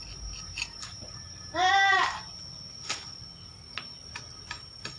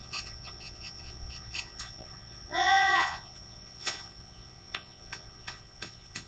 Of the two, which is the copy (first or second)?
second